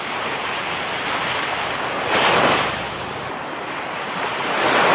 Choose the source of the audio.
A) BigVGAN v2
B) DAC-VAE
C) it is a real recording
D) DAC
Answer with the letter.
C